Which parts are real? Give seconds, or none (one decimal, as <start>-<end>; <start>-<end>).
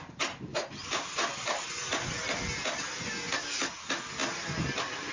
0.0-5.1